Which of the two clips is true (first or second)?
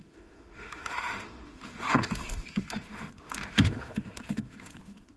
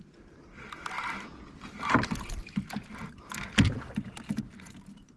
second